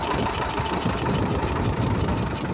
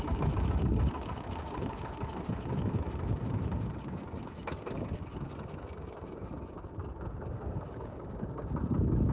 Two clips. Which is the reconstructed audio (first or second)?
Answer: second